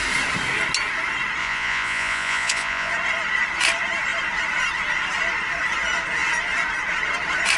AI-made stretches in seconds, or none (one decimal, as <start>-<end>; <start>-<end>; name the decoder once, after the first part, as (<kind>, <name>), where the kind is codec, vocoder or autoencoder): 1.4-2.9 (vocoder, Vocos)